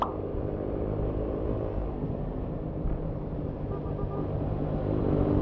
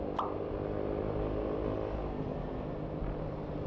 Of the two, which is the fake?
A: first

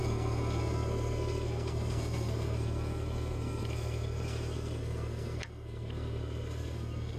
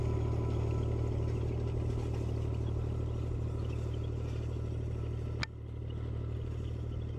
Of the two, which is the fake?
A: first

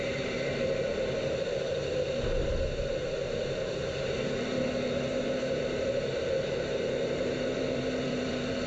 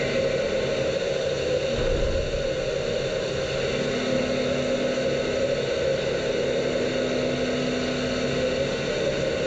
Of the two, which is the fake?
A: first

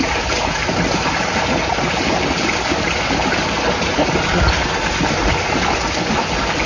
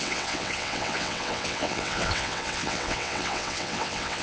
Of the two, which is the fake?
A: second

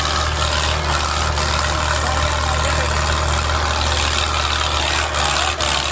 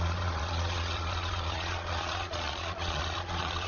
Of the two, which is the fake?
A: second